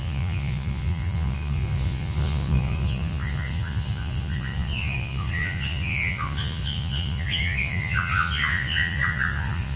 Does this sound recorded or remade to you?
remade